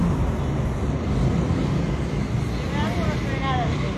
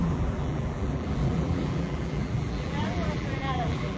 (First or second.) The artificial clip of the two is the second